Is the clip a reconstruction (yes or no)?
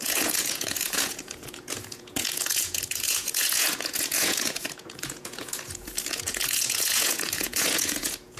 yes